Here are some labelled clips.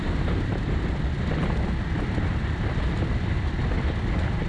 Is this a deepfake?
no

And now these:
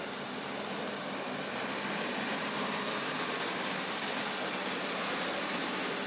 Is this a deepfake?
no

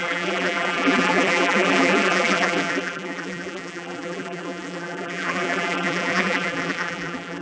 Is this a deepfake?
yes